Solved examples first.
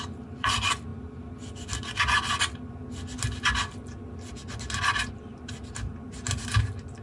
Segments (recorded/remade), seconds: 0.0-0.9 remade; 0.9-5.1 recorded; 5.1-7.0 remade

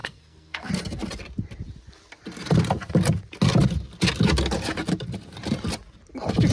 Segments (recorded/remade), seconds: 0.0-0.7 remade; 0.7-6.5 recorded

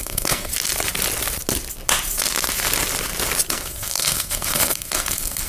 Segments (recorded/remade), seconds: 0.0-0.5 remade; 0.5-3.5 recorded; 3.5-5.5 remade

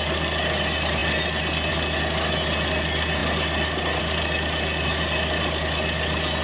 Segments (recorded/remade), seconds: 0.0-6.4 recorded

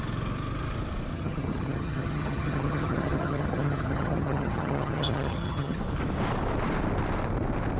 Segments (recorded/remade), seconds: 0.0-1.1 recorded; 1.1-5.8 remade; 5.8-7.8 recorded

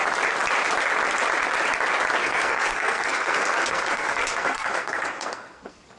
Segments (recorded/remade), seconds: 0.0-2.2 recorded; 2.2-6.0 remade

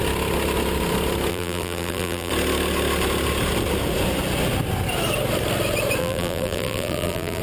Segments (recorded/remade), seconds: 0.0-1.3 recorded; 1.3-2.3 remade; 2.3-6.0 recorded; 6.0-7.4 remade

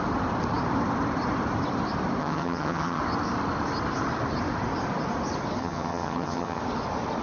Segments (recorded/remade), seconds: 0.0-2.2 recorded; 2.2-3.0 remade; 3.0-5.6 recorded; 5.6-6.6 remade; 6.6-7.2 recorded